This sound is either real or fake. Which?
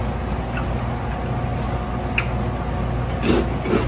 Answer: real